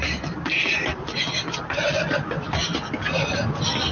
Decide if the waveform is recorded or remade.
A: recorded